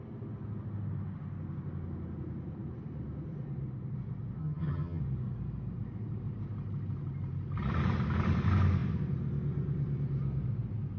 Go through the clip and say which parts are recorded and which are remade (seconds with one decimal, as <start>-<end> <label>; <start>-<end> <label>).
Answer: 0.0-4.4 recorded; 4.4-5.0 remade; 5.0-11.0 recorded